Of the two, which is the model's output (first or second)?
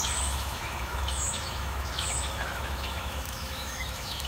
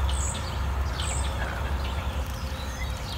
first